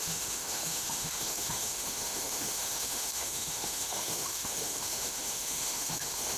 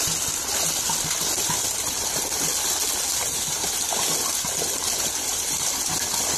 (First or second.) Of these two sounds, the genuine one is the second